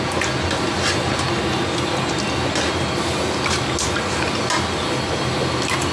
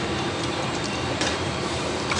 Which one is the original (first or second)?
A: first